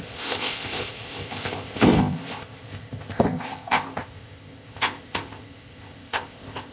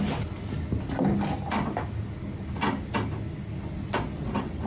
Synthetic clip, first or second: first